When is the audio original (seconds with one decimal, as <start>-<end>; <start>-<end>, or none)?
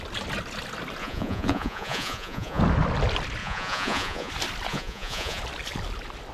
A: 0.0-1.0; 2.6-3.4; 4.3-4.7; 5.4-6.3